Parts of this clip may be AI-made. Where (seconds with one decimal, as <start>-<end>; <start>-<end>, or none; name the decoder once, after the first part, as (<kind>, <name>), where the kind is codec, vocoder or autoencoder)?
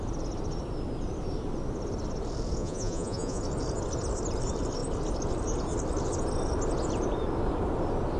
2.6-3.4 (vocoder, Vocos)